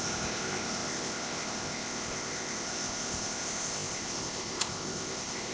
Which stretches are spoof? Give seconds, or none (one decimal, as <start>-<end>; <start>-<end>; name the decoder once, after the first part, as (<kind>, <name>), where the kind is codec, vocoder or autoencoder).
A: 0.0-5.5 (codec, ZipCodec)